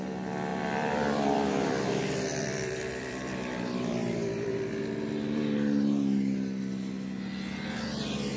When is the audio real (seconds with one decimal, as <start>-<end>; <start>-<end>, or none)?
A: 0.0-0.5; 1.9-2.3; 4.8-8.4